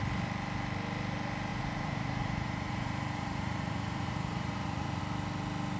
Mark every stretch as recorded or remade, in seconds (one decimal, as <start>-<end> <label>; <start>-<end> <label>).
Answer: 0.0-1.5 recorded; 1.5-5.0 remade; 5.0-5.8 recorded